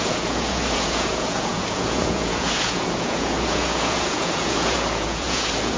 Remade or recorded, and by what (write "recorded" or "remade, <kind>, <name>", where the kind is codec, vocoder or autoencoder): remade, vocoder, Vocos